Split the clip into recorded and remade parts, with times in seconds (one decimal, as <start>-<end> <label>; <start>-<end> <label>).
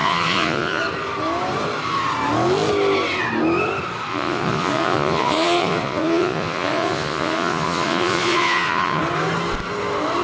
0.0-0.8 remade; 0.8-4.1 recorded; 4.1-9.0 remade; 9.0-10.2 recorded